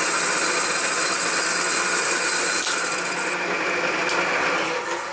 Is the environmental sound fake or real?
real